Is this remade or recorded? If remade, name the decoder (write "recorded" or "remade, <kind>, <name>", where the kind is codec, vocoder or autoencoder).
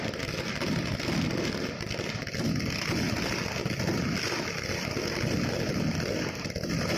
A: recorded